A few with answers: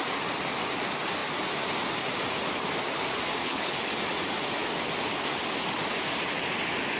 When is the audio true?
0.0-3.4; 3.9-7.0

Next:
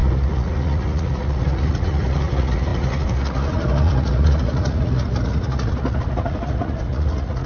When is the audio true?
none

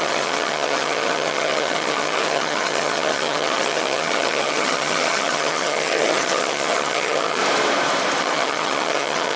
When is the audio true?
7.4-8.2

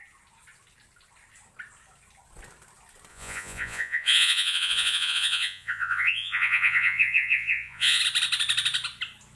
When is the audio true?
0.0-3.1; 8.0-9.4

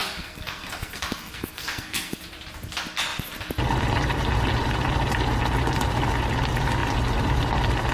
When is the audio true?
2.2-7.9

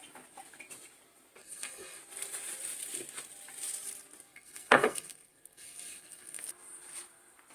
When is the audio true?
0.0-1.4; 2.0-4.3; 6.4-7.5

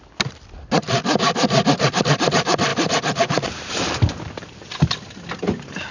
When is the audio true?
0.0-5.9